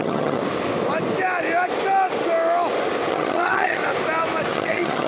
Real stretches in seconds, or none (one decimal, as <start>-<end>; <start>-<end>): 0.4-3.1; 3.8-4.5